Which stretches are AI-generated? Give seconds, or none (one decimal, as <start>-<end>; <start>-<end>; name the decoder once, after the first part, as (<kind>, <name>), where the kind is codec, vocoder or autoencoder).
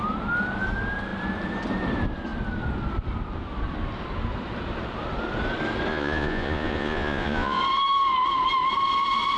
5.9-7.6 (vocoder, Vocos)